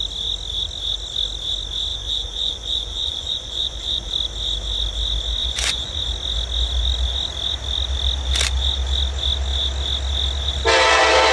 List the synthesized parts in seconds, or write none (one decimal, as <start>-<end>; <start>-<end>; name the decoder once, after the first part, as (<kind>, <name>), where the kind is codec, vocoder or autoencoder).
1.9-4.1 (vocoder, Vocos); 5.4-6.0